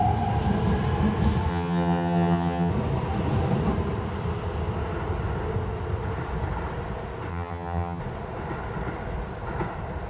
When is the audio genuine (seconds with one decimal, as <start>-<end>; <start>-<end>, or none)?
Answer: 0.0-1.5; 2.7-7.3; 8.0-10.1